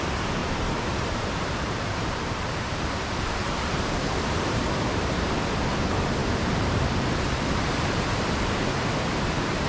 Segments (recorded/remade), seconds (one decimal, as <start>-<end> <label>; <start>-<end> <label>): 0.0-0.4 recorded; 0.4-5.3 remade; 5.3-6.2 recorded; 6.2-8.3 remade; 8.3-9.7 recorded